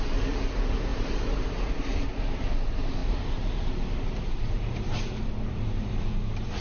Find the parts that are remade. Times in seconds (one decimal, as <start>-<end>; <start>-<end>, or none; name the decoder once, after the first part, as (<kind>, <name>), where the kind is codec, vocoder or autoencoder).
0.0-6.6 (vocoder, BigVGAN v2)